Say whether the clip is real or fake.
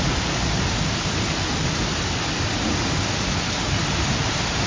real